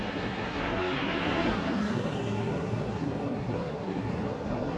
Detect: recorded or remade remade